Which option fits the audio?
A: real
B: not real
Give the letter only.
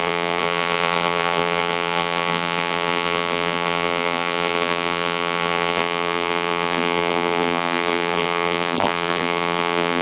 B